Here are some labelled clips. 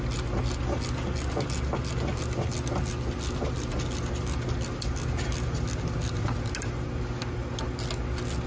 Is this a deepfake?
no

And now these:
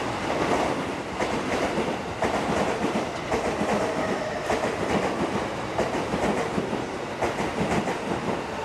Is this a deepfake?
no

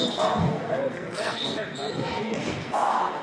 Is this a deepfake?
yes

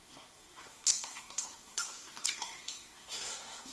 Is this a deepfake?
yes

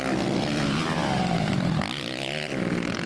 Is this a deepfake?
no